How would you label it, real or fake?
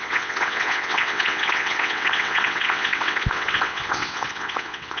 fake